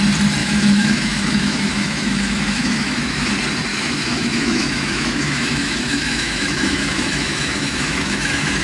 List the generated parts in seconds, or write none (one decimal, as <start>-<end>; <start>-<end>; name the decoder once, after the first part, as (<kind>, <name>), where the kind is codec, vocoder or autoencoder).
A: 0.4-3.3 (autoencoder, DAC-VAE); 3.7-8.6